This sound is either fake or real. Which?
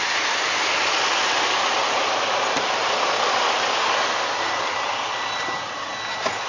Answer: real